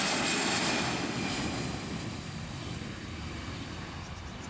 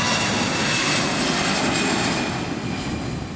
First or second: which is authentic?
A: second